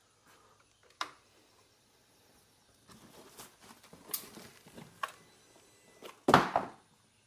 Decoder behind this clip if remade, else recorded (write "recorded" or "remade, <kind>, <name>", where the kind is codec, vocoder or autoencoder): recorded